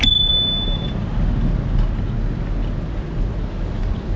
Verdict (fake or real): real